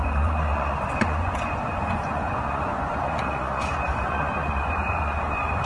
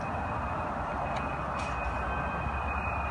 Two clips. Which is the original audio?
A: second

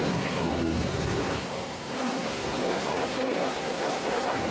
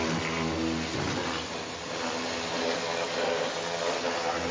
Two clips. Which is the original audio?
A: second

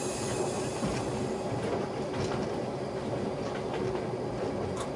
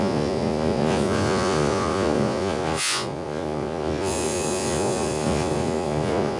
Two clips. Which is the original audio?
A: first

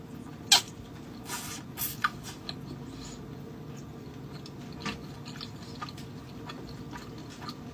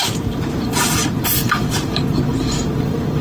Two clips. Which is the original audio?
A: first